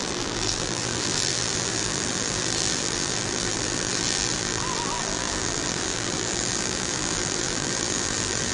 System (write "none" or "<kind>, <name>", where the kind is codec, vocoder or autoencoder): vocoder, BigVGAN v2